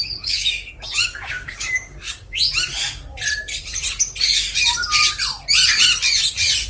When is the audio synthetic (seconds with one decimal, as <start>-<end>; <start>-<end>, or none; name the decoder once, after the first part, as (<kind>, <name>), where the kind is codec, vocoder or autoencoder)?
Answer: 0.0-2.4 (codec, DAC)